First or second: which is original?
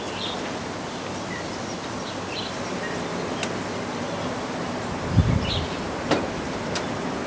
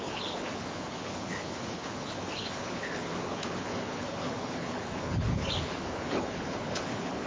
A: first